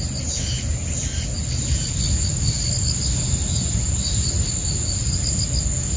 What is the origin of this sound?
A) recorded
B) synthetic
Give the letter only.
A